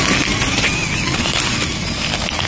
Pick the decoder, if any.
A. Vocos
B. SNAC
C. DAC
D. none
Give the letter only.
D